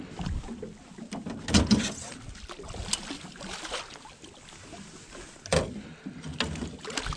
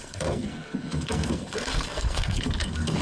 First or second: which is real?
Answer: first